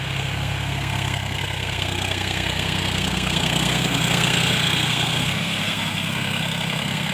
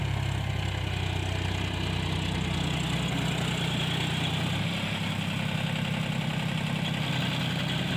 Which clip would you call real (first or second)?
second